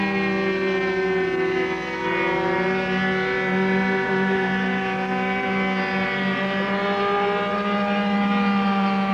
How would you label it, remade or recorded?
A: recorded